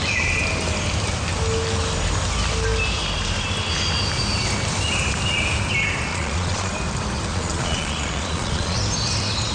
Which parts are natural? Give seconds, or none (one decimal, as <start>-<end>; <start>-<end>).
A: 0.0-6.1; 6.7-7.3; 8.8-9.5